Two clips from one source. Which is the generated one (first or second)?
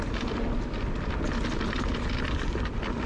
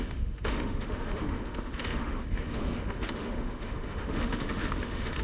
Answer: second